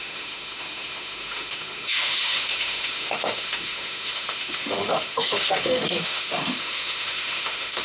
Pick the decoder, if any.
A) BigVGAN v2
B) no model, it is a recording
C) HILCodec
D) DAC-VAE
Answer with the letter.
D